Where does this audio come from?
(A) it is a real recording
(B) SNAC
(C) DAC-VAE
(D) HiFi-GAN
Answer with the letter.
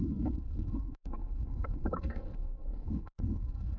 B